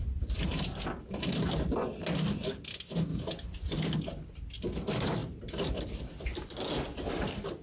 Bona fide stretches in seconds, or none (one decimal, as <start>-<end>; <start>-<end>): 0.0-3.1; 3.8-5.2; 6.0-7.6